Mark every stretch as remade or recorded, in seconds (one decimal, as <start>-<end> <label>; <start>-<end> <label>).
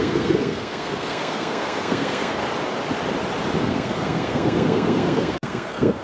0.0-2.4 remade; 2.4-3.6 recorded; 3.6-6.0 remade